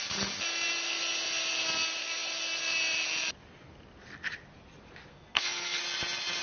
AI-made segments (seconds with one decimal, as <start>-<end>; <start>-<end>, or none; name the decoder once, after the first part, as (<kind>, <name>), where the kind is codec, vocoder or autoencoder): 5.1-5.8 (codec, SNAC)